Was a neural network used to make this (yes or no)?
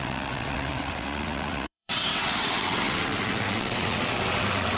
yes